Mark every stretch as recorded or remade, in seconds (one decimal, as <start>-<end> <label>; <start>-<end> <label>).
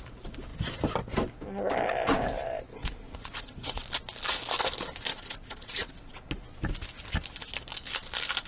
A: 0.0-2.7 recorded; 2.7-3.8 remade; 3.8-5.1 recorded; 5.1-6.2 remade; 6.2-8.5 recorded